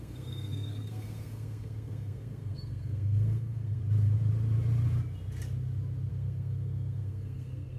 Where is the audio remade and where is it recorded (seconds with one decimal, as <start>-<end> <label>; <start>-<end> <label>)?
0.0-3.8 remade; 3.8-6.1 recorded; 6.1-7.8 remade